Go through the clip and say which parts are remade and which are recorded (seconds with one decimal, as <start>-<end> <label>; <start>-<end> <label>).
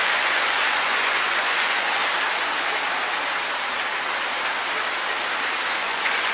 0.0-2.0 remade; 2.0-5.8 recorded; 5.8-6.3 remade